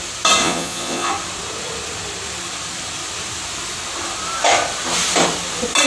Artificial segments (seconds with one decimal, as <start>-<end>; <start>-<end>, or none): 0.4-1.1